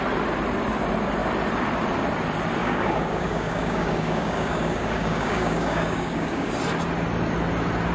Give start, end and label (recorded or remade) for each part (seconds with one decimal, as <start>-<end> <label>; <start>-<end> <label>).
0.0-2.6 recorded; 2.6-6.5 remade; 6.5-7.9 recorded